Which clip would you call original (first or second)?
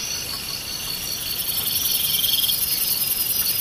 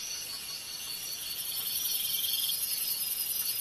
first